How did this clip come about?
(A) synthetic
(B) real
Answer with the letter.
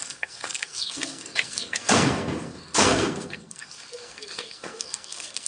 A